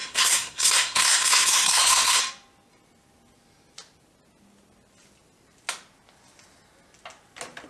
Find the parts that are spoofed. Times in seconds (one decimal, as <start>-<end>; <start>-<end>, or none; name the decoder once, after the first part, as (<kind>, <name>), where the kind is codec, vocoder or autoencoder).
0.0-2.2 (codec, SNAC)